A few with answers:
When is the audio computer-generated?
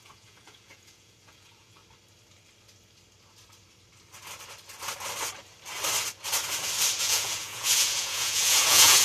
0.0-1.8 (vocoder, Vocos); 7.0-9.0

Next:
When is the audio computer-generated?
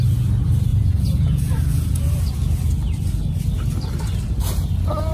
0.7-2.3 (vocoder, Vocos)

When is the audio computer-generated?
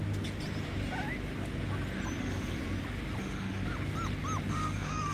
2.2-2.6 (autoencoder, DAC-VAE); 3.2-3.6; 4.5-5.1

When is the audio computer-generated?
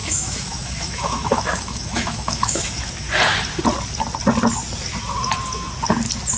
0.0-2.9 (autoencoder, DAC-VAE)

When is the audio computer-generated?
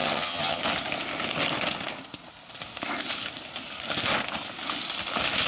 0.0-0.6 (vocoder, HiFi-GAN)